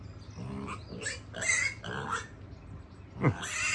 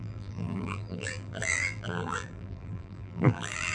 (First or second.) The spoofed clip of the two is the second